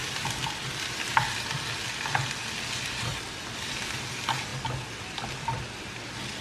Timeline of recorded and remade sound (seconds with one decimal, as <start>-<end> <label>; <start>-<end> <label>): 0.0-6.4 recorded